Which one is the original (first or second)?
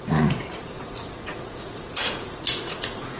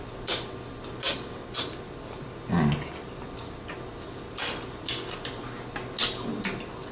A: second